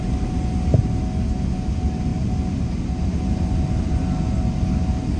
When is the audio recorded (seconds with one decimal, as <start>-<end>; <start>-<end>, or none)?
0.0-5.2